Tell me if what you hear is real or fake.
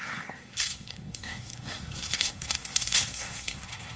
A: fake